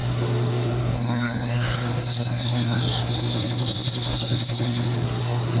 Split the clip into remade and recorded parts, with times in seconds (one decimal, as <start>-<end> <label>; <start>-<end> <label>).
0.0-5.6 remade